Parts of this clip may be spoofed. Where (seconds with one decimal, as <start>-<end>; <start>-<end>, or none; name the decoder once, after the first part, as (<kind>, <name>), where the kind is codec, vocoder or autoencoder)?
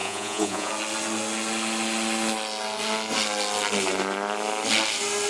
0.0-0.7 (vocoder, Vocos)